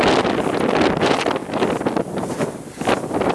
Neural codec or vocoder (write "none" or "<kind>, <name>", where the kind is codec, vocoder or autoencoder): none